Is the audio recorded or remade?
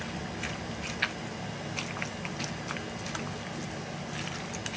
recorded